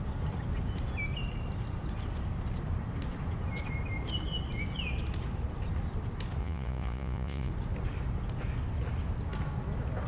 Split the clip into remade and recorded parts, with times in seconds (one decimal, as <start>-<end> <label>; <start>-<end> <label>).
0.0-6.4 recorded; 6.4-7.5 remade; 7.5-10.1 recorded